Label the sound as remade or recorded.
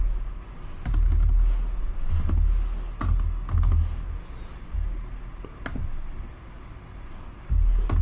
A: recorded